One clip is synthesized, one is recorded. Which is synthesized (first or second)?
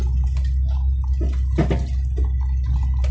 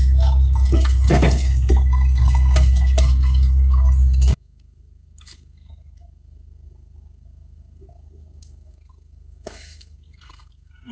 second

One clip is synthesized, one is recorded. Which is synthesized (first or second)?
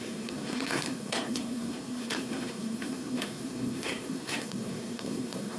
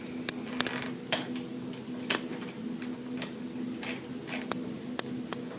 first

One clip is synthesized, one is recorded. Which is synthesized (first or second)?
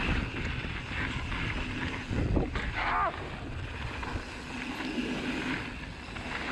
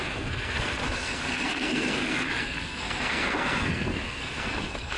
second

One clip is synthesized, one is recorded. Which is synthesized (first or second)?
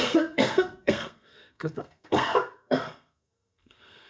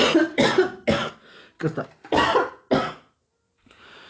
first